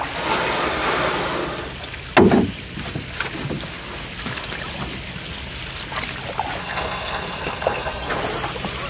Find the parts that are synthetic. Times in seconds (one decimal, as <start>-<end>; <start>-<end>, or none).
6.6-8.1